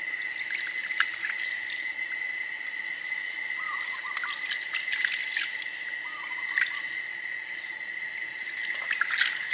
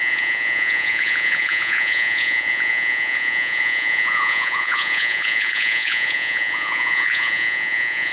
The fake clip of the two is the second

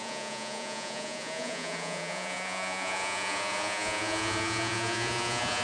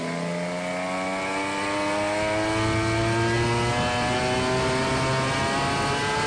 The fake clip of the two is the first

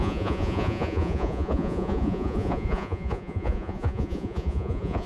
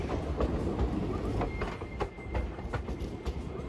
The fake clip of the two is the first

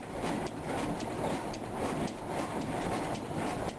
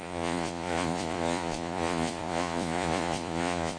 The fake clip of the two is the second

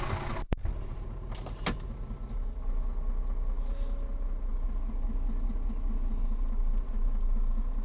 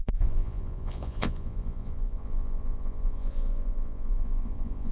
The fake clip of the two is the second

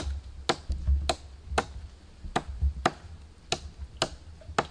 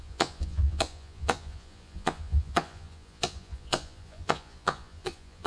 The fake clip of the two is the second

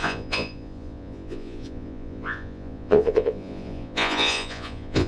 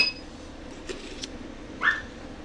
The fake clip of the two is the first